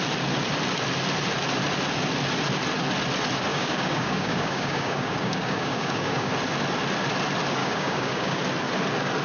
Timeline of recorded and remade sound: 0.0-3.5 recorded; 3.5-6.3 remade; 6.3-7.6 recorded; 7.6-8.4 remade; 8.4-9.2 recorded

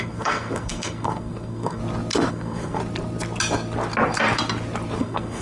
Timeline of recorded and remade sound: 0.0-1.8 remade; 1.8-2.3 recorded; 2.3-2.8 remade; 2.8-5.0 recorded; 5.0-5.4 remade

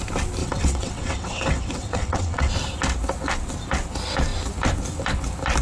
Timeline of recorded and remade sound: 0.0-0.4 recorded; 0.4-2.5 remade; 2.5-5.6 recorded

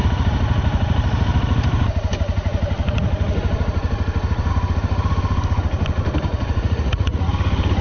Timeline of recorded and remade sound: 0.0-6.3 recorded; 6.3-7.3 remade; 7.3-7.8 recorded

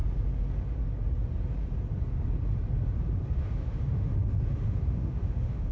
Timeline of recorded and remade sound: 0.0-3.4 recorded; 3.4-5.7 remade